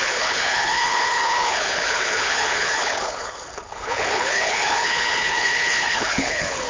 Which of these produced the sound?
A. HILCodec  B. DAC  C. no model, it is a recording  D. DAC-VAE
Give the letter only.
A